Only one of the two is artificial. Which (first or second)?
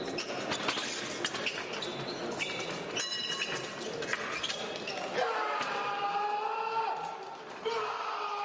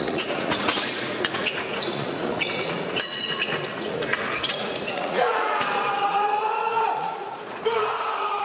second